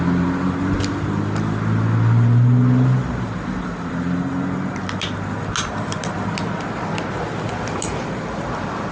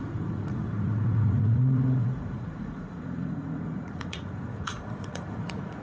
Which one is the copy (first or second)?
second